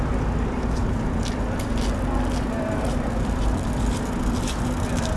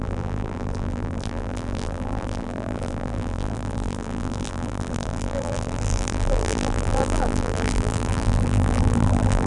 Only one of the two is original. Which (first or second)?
first